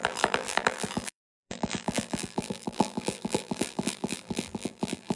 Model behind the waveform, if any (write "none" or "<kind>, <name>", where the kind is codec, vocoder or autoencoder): vocoder, BigVGAN v2